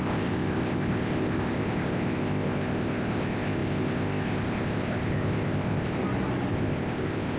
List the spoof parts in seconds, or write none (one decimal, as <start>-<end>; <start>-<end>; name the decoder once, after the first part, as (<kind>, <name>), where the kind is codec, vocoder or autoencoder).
0.0-6.0 (codec, ZipCodec); 6.5-7.4